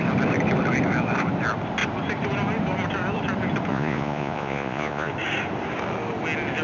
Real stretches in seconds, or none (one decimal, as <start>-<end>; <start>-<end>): 0.0-3.7; 5.1-6.6

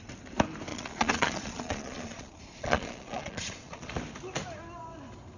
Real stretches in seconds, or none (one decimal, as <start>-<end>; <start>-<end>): 0.0-0.7; 3.9-5.4

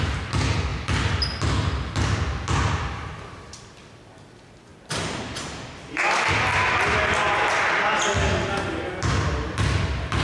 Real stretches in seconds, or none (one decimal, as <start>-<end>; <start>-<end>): 0.0-10.2

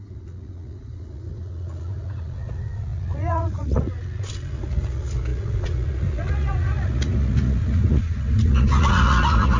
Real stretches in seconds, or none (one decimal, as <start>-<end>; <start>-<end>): none

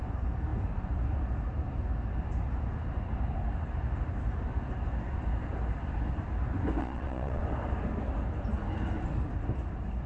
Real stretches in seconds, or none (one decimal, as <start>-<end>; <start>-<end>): 0.0-6.8; 7.4-10.1